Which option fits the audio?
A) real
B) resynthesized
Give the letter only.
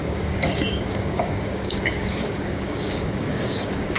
B